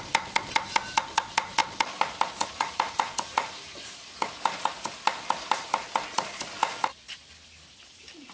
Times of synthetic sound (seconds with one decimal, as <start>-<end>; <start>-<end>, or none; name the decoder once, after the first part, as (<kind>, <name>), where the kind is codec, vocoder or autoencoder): none